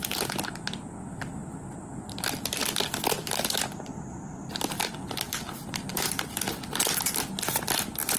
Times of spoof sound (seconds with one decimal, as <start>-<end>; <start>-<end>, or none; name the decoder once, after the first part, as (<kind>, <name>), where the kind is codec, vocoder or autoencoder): 1.4-4.5 (vocoder, BigVGAN v2)

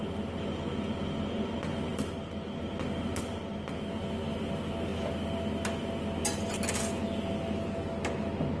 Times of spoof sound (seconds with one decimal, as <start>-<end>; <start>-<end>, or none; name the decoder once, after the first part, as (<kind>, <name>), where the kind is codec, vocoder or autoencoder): none

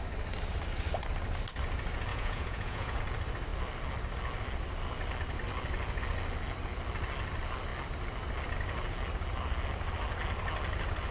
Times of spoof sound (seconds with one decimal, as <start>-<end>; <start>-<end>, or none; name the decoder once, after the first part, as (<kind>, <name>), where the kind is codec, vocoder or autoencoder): 2.1-3.0 (vocoder, Vocos)

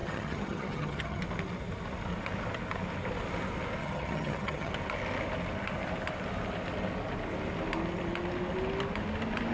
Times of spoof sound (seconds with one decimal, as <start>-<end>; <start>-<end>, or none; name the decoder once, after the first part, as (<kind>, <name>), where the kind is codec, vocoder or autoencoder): 0.0-1.2 (vocoder, HiFi-GAN); 3.8-4.7